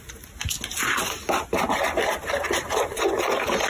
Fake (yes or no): no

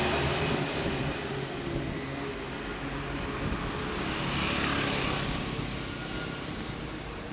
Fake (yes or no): no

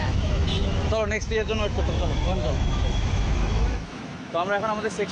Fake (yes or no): yes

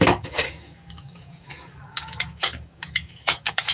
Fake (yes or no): yes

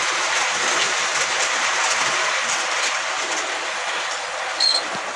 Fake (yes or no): no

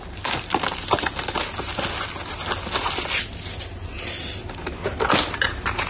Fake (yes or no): no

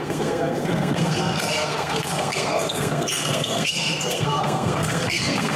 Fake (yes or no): yes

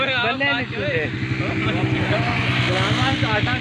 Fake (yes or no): no